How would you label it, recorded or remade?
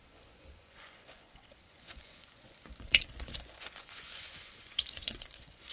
remade